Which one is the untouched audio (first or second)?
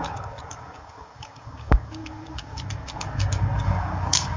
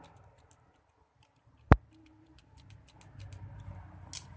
second